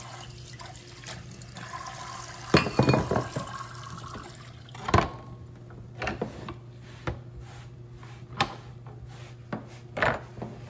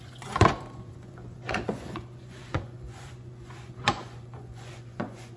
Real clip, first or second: first